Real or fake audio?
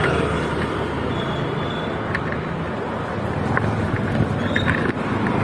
real